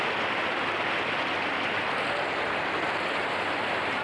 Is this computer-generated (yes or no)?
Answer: no